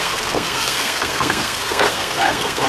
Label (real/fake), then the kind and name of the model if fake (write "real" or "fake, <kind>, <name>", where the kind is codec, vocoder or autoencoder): fake, codec, SNAC